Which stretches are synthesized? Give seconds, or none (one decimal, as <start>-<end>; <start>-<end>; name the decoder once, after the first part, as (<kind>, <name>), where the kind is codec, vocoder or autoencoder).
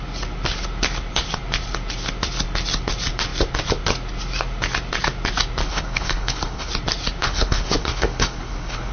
5.6-6.7 (codec, HILCodec); 7.2-8.9